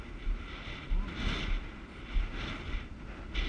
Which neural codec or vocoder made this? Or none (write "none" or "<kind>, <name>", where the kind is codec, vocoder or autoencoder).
none